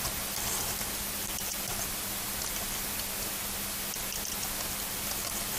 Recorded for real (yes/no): yes